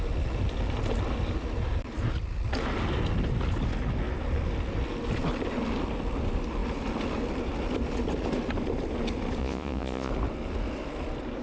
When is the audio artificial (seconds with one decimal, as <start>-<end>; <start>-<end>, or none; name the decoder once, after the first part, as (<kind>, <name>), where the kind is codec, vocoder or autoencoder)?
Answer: 9.4-10.1 (vocoder, Vocos)